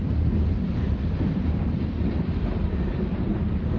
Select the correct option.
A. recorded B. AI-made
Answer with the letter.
A